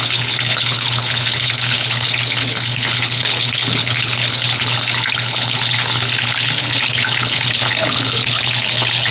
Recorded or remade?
remade